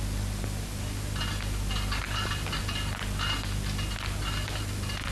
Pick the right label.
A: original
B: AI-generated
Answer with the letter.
A